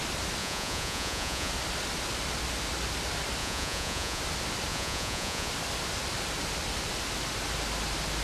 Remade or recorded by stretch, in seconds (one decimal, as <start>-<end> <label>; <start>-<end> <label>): 0.0-0.4 recorded; 0.4-1.5 remade; 1.5-3.4 recorded; 3.4-4.2 remade; 4.2-4.7 recorded; 4.7-5.5 remade; 5.5-8.2 recorded